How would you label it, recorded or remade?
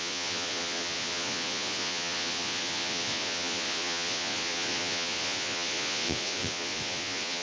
remade